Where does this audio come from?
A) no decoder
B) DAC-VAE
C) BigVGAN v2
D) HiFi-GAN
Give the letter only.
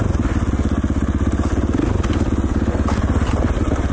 A